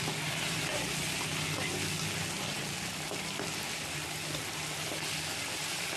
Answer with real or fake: real